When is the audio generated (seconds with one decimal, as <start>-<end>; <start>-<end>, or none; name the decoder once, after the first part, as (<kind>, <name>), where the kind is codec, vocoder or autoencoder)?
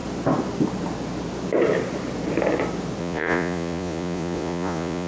3.0-5.1 (vocoder, Vocos)